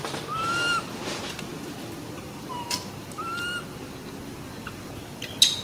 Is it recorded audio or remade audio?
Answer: recorded